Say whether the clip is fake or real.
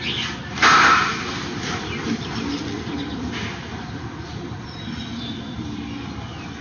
real